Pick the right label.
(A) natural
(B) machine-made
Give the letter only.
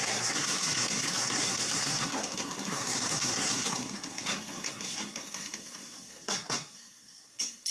B